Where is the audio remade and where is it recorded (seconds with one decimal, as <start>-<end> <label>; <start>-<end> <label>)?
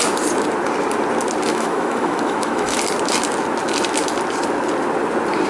0.0-1.5 recorded; 1.5-2.8 remade; 2.8-5.5 recorded